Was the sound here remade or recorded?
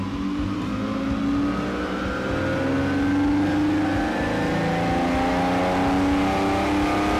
recorded